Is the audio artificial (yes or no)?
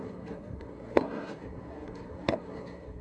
yes